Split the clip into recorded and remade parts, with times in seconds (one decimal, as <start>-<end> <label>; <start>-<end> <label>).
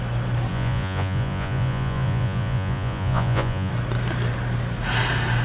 0.0-0.5 recorded; 0.5-3.7 remade; 3.7-5.4 recorded